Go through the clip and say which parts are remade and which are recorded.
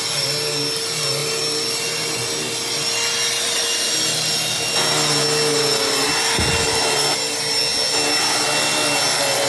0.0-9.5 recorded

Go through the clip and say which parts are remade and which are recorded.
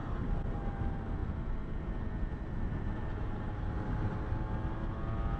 0.0-5.4 recorded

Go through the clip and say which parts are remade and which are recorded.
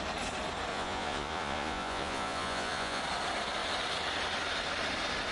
0.0-0.7 recorded; 0.7-3.0 remade; 3.0-5.3 recorded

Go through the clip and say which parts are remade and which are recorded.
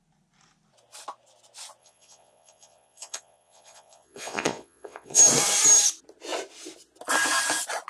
0.0-1.8 recorded; 1.8-5.2 remade; 5.2-7.9 recorded